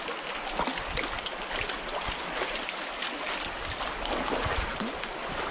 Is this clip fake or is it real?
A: real